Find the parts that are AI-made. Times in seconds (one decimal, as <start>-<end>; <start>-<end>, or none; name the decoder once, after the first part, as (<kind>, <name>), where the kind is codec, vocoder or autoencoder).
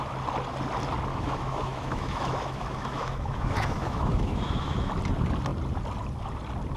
1.1-4.9 (autoencoder, DAC-VAE)